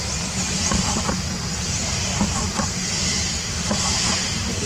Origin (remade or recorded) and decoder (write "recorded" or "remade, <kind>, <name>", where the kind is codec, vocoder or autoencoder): recorded